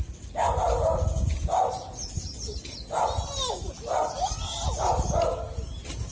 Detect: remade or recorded recorded